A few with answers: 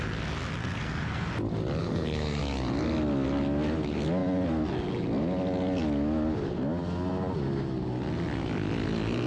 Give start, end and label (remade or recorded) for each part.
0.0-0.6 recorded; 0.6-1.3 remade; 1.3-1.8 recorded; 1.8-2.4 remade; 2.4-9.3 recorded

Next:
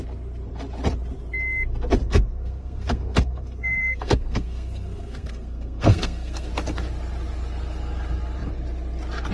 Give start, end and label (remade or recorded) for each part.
0.0-2.0 recorded; 2.0-6.5 remade; 6.5-9.3 recorded

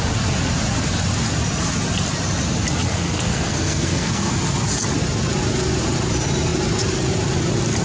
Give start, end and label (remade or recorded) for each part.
0.0-2.9 recorded; 2.9-4.3 remade; 4.3-7.8 recorded

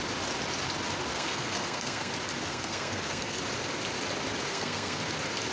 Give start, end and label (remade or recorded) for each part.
0.0-1.1 recorded; 1.1-2.1 remade; 2.1-2.5 recorded; 2.5-3.4 remade; 3.4-4.5 recorded; 4.5-5.0 remade; 5.0-5.5 recorded

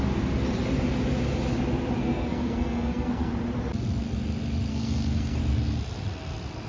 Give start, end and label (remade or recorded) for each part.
0.0-2.0 recorded; 2.0-3.3 remade; 3.3-4.7 recorded; 4.7-5.4 remade; 5.4-6.7 recorded

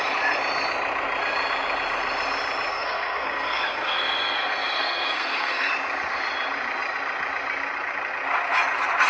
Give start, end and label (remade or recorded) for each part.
0.0-2.7 recorded; 2.7-5.7 remade; 5.7-9.1 recorded